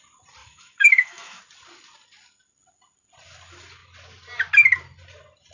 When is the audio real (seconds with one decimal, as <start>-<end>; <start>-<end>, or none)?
0.0-0.4; 1.4-5.5